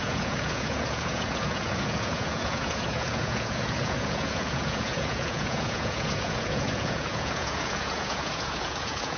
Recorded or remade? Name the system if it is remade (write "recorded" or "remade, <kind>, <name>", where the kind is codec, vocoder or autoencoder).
remade, vocoder, Vocos